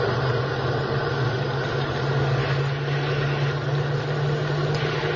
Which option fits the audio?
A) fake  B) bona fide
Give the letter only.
B